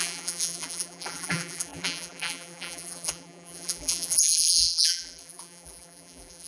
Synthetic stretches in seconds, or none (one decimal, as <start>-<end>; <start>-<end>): 0.0-6.5